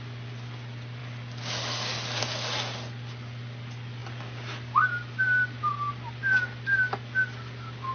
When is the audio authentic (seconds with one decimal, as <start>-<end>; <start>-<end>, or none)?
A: 0.0-7.9